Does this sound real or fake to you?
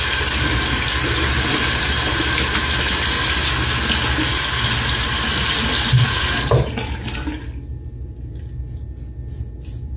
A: real